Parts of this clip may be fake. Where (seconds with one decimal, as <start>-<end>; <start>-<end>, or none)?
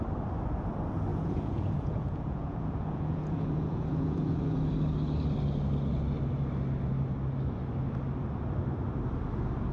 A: 1.1-4.6